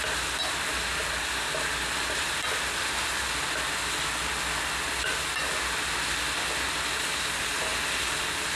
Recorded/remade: recorded